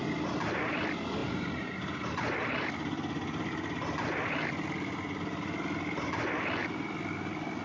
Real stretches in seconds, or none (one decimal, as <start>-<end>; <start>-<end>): 0.0-1.2; 2.7-7.6